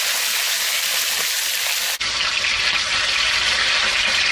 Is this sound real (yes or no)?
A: yes